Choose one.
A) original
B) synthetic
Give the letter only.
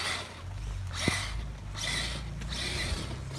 A